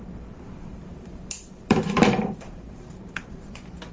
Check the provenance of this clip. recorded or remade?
remade